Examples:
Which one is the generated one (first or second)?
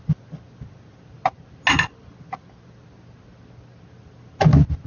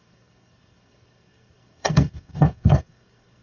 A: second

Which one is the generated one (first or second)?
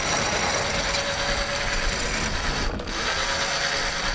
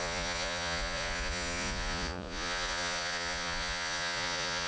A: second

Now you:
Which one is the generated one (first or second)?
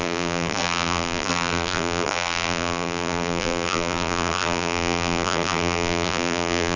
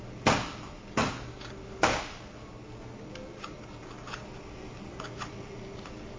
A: first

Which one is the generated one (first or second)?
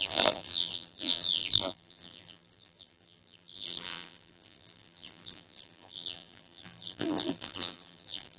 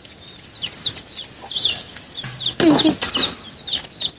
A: first